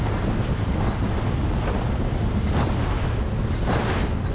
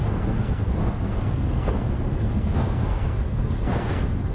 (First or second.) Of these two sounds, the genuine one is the first